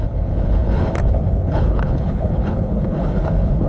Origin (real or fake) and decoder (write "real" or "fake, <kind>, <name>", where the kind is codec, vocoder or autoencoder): fake, codec, HILCodec